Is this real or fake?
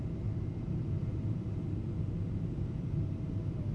real